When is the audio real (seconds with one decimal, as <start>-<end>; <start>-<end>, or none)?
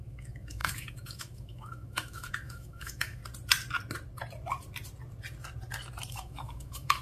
3.2-6.1